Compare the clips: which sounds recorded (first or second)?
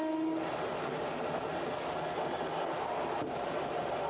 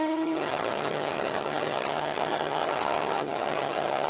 first